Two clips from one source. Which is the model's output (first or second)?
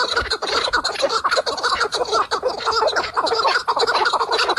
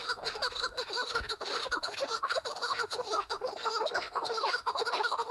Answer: second